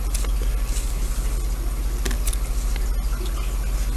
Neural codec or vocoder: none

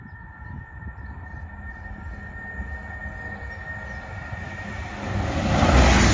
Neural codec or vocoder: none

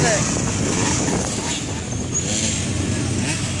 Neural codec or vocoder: none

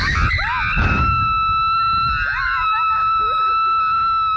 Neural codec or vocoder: none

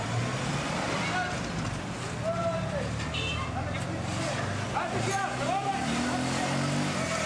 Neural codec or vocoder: none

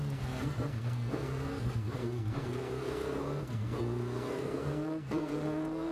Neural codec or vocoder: codec, SNAC